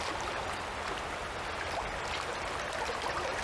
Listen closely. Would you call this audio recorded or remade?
recorded